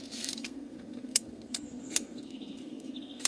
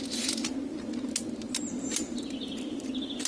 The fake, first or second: first